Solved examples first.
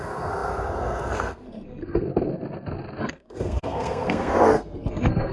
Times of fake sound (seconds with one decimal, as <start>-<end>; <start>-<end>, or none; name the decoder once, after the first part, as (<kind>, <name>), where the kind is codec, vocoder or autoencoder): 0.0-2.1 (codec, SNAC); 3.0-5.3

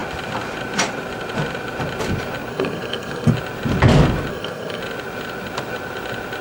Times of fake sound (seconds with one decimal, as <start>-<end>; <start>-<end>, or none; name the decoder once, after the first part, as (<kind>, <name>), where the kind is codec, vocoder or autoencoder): 2.5-3.3 (codec, SNAC); 4.3-4.8

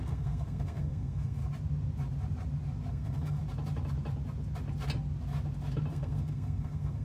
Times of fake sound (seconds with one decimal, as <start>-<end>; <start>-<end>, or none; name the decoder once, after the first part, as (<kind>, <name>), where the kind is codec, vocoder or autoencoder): 0.0-1.4 (codec, SNAC); 2.9-3.4; 5.9-7.0

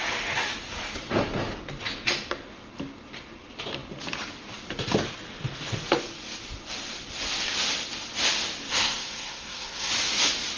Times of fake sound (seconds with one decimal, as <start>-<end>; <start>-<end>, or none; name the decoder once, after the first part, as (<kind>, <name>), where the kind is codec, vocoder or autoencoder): 8.7-9.9 (codec, SNAC)

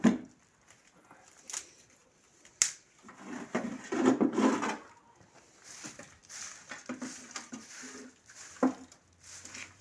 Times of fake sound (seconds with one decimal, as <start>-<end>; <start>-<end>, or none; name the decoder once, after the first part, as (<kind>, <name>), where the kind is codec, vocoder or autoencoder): none